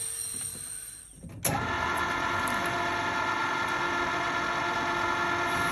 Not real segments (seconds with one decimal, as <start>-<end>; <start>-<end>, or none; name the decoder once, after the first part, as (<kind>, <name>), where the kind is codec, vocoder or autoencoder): none